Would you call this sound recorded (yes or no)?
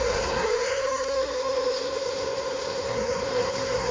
no